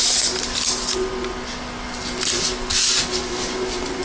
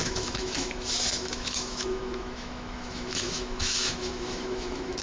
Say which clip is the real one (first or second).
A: first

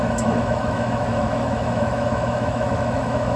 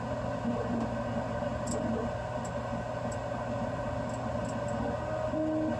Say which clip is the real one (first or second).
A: second